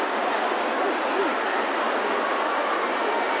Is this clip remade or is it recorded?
recorded